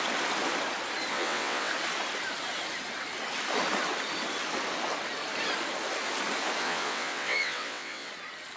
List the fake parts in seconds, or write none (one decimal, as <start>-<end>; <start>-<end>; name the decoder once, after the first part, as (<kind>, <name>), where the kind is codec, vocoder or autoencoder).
1.1-1.7 (vocoder, WaveNeXt); 6.6-8.1